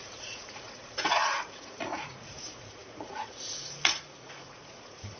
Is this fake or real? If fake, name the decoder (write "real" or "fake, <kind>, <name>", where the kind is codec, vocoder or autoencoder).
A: fake, vocoder, Vocos